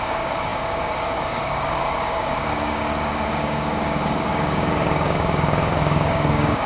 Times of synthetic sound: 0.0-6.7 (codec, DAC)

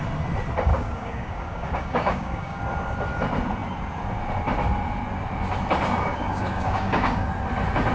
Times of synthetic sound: 0.7-2.6 (codec, DAC); 6.1-7.3

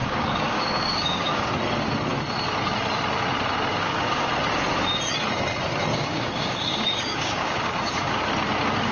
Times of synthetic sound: 0.0-1.5 (codec, DAC); 3.7-4.3; 5.9-8.1

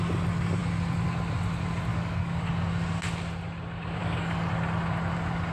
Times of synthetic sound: 1.9-2.5 (codec, DAC); 4.0-4.5

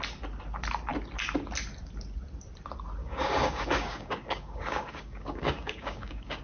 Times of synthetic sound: 3.0-6.4 (codec, DAC)